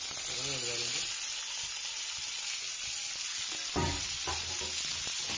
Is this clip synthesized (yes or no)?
no